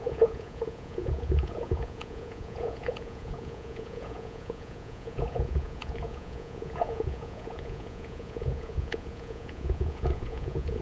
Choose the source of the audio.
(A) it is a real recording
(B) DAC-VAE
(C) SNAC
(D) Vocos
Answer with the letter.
D